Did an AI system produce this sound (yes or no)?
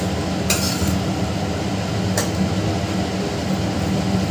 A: no